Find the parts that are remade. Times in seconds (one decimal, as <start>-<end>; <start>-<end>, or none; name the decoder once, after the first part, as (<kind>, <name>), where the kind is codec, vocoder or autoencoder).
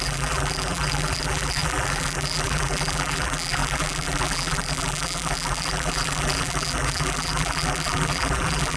0.0-8.8 (vocoder, BigVGAN v2)